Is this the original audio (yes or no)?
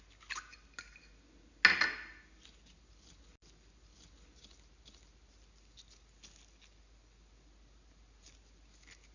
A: yes